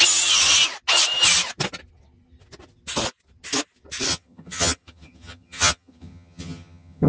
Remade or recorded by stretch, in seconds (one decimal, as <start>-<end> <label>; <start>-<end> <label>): 0.0-4.1 recorded; 4.1-7.1 remade